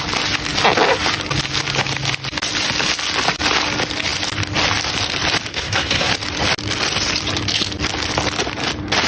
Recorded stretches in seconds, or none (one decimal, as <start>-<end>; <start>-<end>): 0.0-5.5; 6.1-9.1